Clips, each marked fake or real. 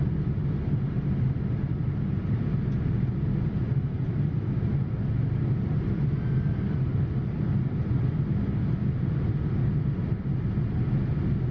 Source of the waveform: real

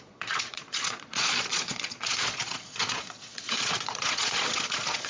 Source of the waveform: fake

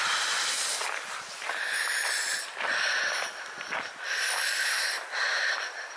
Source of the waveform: real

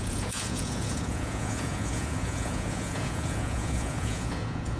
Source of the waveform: fake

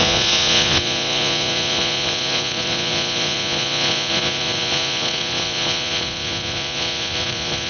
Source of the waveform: fake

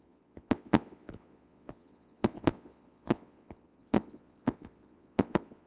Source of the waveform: fake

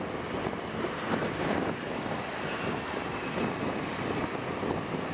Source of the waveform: real